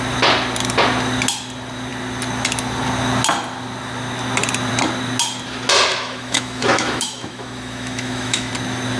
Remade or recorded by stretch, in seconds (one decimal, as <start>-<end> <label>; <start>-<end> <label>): 0.0-5.9 recorded; 5.9-8.5 remade; 8.5-9.0 recorded